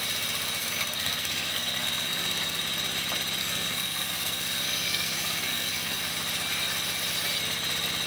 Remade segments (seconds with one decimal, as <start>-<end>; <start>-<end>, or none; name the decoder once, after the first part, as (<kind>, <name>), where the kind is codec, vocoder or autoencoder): 0.6-2.6 (codec, SNAC); 3.4-6.1